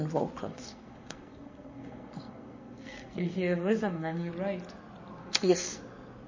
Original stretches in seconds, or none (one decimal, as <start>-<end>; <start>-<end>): 0.0-0.5; 4.3-5.2; 5.8-6.3